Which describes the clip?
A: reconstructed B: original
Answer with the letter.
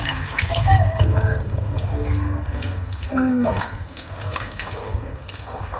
A